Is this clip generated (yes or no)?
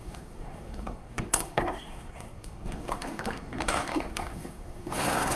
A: yes